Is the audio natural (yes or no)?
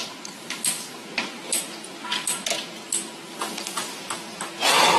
yes